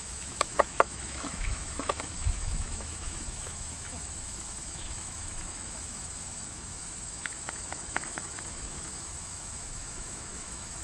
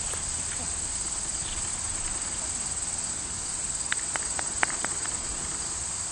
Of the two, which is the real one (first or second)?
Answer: second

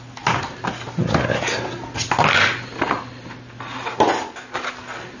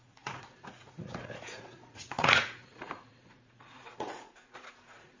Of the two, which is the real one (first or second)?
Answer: first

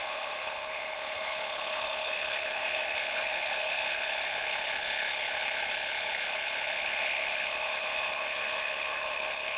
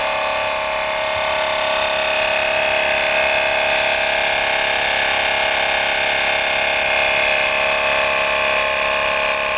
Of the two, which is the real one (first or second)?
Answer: second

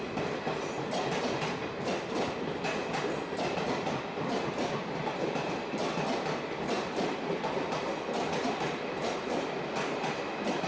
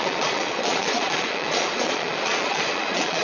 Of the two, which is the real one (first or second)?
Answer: first